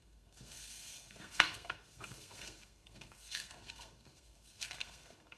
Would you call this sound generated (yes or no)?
yes